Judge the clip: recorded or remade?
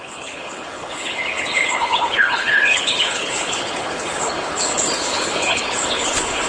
remade